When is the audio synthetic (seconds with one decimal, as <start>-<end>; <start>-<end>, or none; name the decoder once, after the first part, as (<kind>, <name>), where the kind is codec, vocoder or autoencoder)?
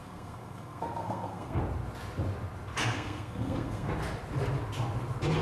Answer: 0.0-1.6 (codec, SNAC); 2.9-3.9